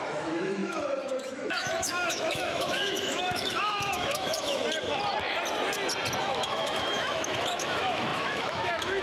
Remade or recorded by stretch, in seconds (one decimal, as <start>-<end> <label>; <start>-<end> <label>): 0.0-4.6 remade; 4.6-6.2 recorded; 6.2-9.0 remade